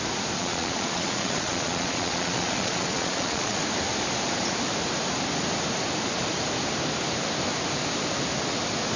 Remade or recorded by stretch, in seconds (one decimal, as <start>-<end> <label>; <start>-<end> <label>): 0.0-0.4 recorded; 0.4-3.6 remade; 3.6-9.0 recorded